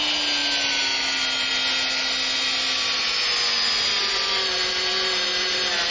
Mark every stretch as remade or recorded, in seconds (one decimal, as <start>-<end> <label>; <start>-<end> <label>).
0.0-5.9 recorded